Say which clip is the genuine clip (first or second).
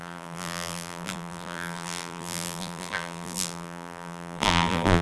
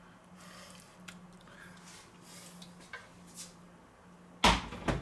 second